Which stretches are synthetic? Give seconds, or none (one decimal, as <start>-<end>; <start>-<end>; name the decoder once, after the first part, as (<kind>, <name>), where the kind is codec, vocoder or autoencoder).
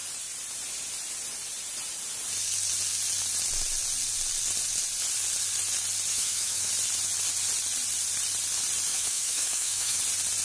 6.1-6.7 (autoencoder, DAC-VAE); 8.9-10.0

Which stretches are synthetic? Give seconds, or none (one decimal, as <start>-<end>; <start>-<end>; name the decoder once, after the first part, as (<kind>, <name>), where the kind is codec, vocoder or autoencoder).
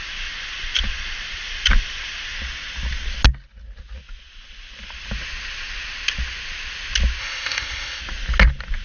7.2-8.0 (codec, ZipCodec)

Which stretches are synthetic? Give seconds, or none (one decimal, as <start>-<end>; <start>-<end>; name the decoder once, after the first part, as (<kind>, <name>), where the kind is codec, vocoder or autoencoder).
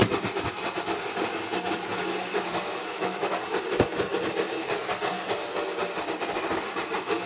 2.3-3.4 (autoencoder, DAC-VAE)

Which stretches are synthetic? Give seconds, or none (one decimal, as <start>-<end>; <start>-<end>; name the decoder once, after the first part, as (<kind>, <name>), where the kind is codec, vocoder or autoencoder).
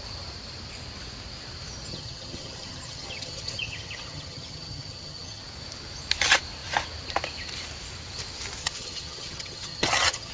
1.9-5.4 (vocoder, HiFi-GAN); 8.6-10.3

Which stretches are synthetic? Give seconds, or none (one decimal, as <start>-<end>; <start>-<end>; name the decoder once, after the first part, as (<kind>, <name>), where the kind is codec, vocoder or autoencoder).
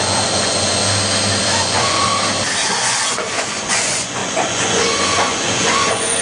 0.0-0.8 (vocoder, Vocos); 1.4-2.1; 2.7-6.2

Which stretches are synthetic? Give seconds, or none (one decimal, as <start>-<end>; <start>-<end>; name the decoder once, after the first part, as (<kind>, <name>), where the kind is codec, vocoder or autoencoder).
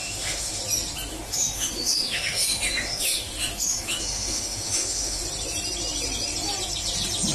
0.0-0.6 (autoencoder, DAC-VAE); 1.1-5.2